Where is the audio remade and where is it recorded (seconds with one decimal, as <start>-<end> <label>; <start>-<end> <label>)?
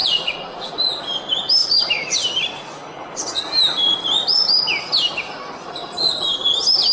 0.0-0.7 remade; 0.7-6.9 recorded